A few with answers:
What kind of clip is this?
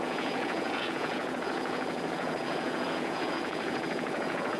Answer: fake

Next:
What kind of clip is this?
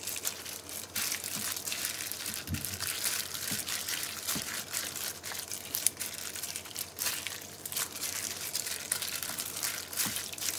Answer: fake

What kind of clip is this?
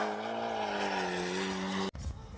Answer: real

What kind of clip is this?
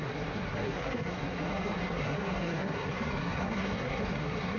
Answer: fake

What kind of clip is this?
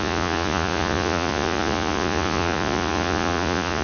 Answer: fake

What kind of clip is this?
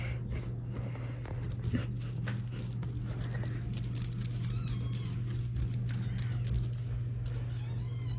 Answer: real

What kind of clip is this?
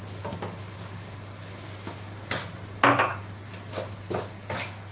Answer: real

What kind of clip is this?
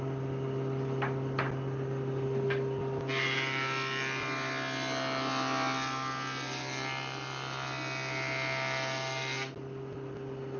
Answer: real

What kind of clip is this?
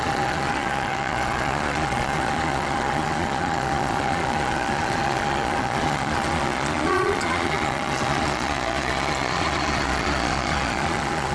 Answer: fake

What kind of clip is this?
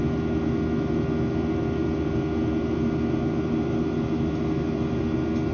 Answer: real